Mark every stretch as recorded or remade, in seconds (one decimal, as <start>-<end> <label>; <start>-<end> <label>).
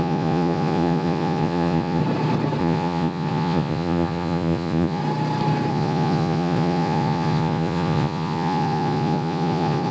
0.0-2.0 remade; 2.0-2.6 recorded; 2.6-5.0 remade; 5.0-5.7 recorded; 5.7-9.9 remade